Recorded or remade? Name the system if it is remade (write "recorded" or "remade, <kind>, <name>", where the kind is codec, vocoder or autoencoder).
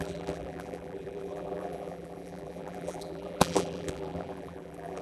remade, vocoder, BigVGAN v2